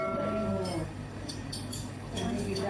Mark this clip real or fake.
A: fake